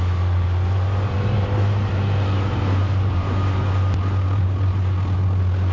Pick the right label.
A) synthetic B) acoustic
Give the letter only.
B